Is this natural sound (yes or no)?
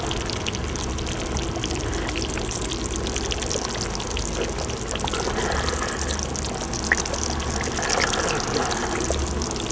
yes